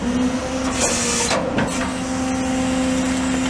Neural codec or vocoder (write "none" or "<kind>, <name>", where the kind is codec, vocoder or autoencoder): none